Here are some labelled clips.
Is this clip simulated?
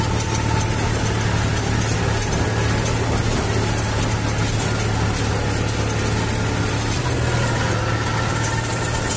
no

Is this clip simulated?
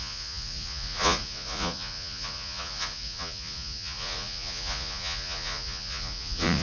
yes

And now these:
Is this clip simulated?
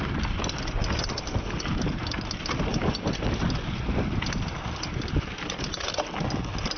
no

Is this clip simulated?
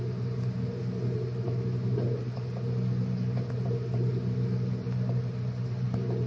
no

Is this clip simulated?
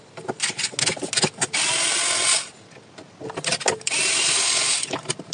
no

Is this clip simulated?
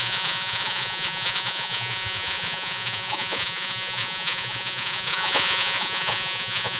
yes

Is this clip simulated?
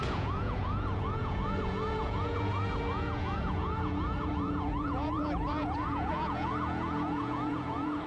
yes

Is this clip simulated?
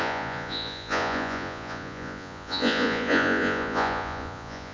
yes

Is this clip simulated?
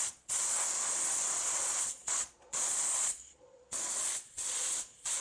yes